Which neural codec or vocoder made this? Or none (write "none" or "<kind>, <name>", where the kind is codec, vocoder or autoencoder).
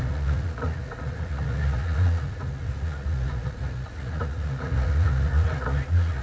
vocoder, Vocos